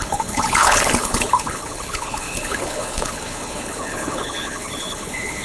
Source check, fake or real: fake